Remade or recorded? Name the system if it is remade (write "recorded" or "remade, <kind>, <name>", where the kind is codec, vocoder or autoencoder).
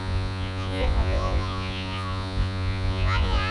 remade, vocoder, Vocos